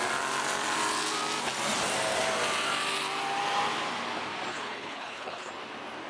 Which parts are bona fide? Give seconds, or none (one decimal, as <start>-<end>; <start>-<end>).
0.0-4.5; 5.5-6.1